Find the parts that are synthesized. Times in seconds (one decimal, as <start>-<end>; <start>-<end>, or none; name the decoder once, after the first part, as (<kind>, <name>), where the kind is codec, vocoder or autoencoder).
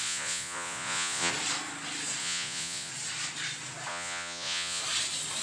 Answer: 0.0-1.3 (vocoder, Vocos); 2.2-2.9; 3.9-4.8